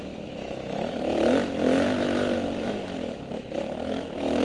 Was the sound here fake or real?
fake